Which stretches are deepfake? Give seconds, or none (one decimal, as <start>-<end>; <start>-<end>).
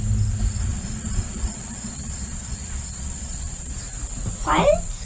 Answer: 0.7-3.8